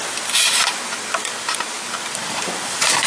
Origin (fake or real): real